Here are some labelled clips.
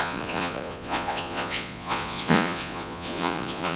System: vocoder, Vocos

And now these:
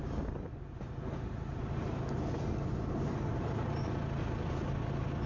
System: none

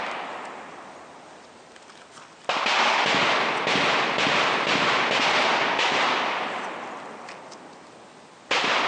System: none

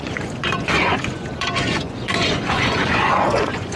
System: vocoder, Vocos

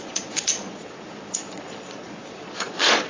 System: vocoder, Vocos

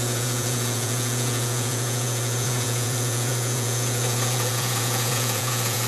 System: vocoder, Vocos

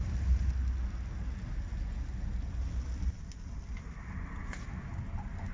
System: none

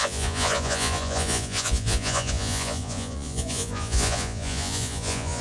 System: vocoder, Vocos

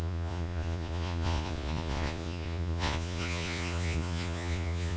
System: vocoder, Vocos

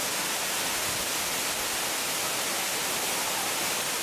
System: none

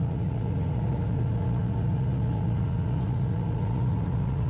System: vocoder, Vocos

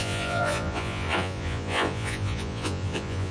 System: vocoder, Vocos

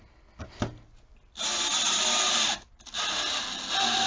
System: none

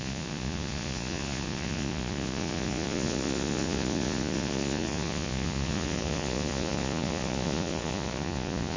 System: vocoder, Vocos